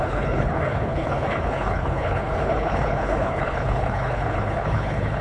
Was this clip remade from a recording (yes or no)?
yes